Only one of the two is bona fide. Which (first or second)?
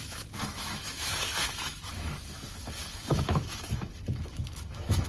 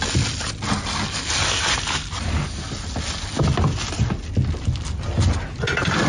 second